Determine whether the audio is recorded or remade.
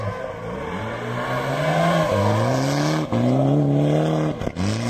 recorded